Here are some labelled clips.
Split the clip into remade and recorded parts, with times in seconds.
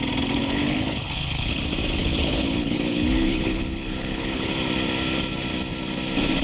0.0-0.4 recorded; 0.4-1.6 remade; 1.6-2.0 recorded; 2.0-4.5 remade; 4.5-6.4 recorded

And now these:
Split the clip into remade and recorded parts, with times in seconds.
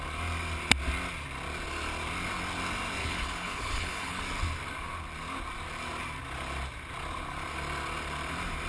0.0-3.0 recorded; 3.0-4.2 remade; 4.2-8.7 recorded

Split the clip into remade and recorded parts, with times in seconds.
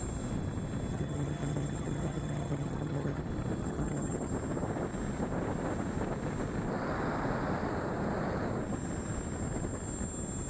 0.0-0.9 recorded; 0.9-3.2 remade; 3.2-3.6 recorded; 3.6-4.3 remade; 4.3-10.5 recorded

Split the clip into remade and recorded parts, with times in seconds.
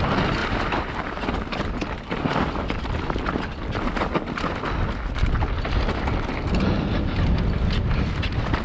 0.0-0.4 recorded; 0.4-1.2 remade; 1.2-8.6 recorded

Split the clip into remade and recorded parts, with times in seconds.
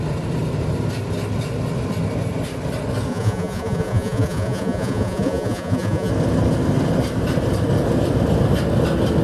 0.0-3.1 recorded; 3.1-6.1 remade; 6.1-9.2 recorded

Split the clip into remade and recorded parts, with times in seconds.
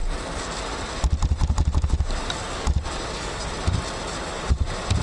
0.0-5.0 recorded